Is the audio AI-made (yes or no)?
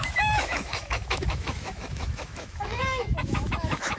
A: yes